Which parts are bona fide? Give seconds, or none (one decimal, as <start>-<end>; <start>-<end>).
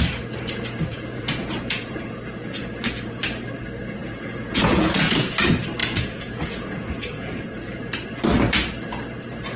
0.0-0.9; 3.2-4.0; 5.3-5.8; 7.8-9.6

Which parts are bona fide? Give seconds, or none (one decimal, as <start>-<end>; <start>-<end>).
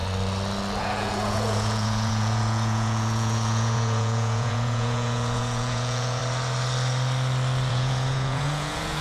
0.0-0.8; 6.2-7.7